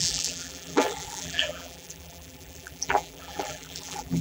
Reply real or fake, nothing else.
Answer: fake